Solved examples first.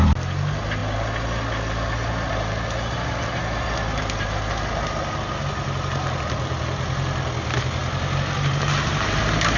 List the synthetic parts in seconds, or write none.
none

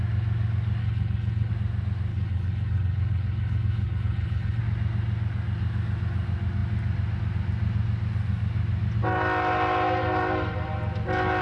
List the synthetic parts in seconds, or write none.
0.8-1.5; 2.1-4.6

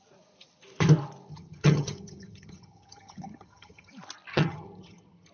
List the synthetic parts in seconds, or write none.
1.3-3.9; 4.3-5.3

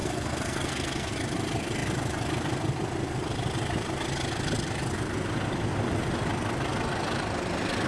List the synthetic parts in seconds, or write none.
0.0-1.1

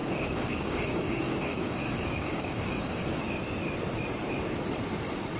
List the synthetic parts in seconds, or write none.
0.0-3.2

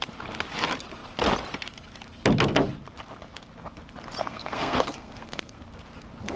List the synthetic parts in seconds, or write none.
4.2-5.6

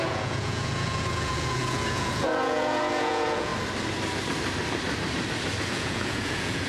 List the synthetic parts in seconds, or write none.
0.0-3.5; 5.7-6.7